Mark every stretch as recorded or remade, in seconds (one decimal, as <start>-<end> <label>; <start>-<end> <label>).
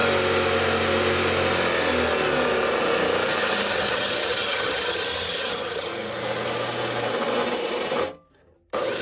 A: 0.0-3.7 recorded; 3.7-5.9 remade; 5.9-9.0 recorded